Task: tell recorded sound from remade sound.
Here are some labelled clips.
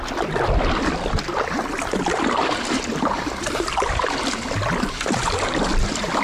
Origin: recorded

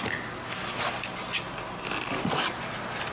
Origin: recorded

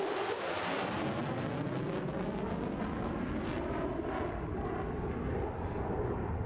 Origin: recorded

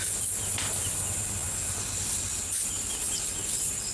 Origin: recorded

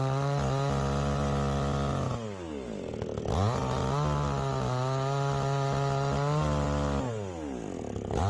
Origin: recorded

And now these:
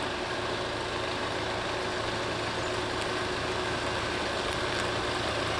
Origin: recorded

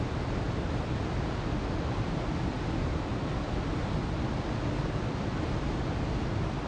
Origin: recorded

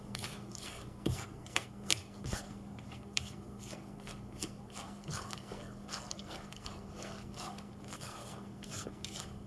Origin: remade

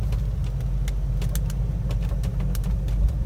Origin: recorded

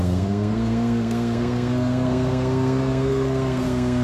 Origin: remade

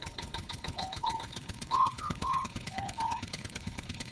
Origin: remade